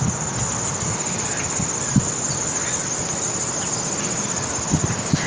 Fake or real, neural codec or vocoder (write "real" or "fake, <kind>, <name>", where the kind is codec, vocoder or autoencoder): real